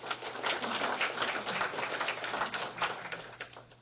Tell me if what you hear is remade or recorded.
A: recorded